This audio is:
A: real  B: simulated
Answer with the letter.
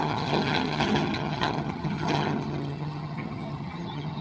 B